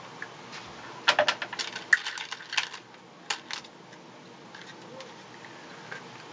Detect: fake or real real